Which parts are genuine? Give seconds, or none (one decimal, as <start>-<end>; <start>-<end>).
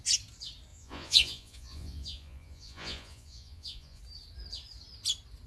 0.0-0.7; 4.0-5.5